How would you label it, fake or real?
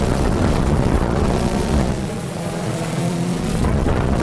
fake